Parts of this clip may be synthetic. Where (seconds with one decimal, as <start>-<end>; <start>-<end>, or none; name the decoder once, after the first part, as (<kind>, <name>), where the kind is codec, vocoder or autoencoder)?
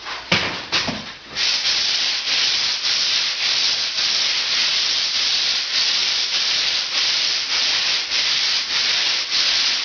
4.7-5.5 (vocoder, BigVGAN v2); 6.0-7.1